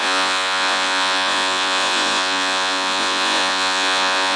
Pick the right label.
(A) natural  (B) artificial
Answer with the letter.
B